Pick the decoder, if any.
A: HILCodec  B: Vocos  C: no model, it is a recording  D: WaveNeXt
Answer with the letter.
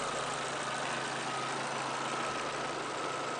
C